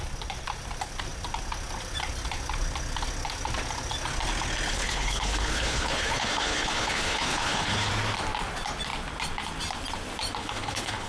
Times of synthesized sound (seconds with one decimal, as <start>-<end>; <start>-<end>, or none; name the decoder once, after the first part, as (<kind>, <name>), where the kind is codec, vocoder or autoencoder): 4.7-7.9 (codec, HILCodec); 10.4-11.1